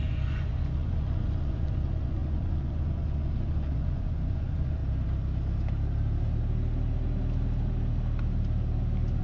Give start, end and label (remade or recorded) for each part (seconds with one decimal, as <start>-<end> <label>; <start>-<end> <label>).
0.0-4.8 remade; 4.8-9.2 recorded